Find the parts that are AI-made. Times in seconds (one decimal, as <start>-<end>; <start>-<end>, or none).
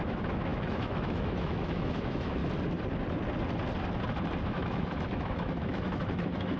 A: 0.0-2.4; 4.4-6.6